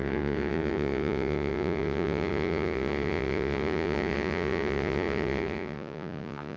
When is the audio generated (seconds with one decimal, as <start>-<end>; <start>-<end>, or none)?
0.0-6.6